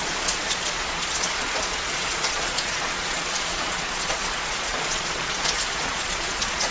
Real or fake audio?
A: fake